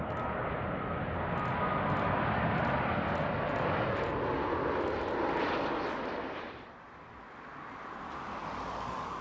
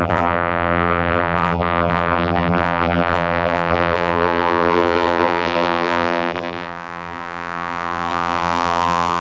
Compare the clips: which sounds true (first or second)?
first